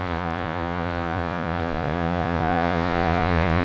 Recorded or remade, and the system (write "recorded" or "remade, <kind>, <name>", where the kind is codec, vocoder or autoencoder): remade, vocoder, Vocos